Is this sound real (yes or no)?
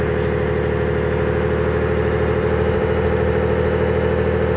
yes